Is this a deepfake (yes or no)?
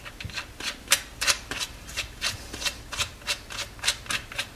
no